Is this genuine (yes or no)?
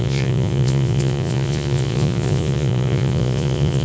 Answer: no